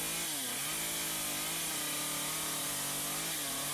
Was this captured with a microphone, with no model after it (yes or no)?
yes